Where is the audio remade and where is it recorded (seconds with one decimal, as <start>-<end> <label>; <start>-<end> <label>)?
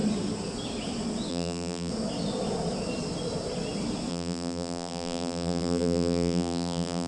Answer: 0.0-1.3 recorded; 1.3-1.9 remade; 1.9-4.1 recorded; 4.1-7.1 remade